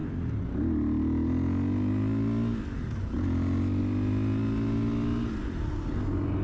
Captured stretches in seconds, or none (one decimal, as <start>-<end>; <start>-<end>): 0.0-6.4